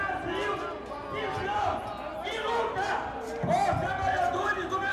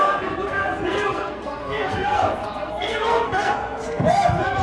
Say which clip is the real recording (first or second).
first